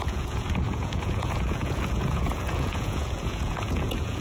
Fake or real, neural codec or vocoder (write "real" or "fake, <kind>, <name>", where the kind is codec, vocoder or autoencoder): fake, vocoder, Vocos